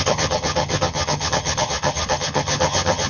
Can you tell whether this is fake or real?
fake